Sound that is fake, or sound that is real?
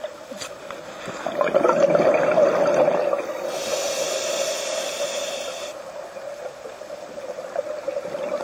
real